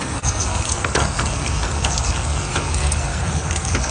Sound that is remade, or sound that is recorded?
remade